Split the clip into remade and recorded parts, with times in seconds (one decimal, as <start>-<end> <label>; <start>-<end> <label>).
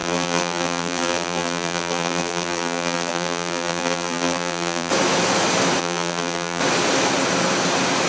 0.0-4.9 remade; 4.9-5.8 recorded; 5.8-6.6 remade; 6.6-8.1 recorded